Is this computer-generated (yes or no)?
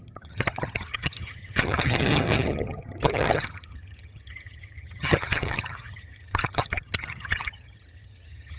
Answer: yes